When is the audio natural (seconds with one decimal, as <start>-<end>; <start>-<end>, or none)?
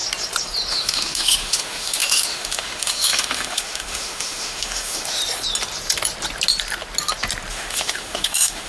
0.0-0.7; 5.2-7.5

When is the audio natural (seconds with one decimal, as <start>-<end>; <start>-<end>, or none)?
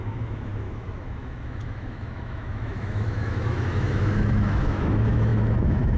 none